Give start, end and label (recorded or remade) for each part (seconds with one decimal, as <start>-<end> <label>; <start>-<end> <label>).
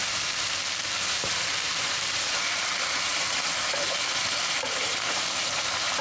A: 0.0-1.0 recorded; 1.0-6.0 remade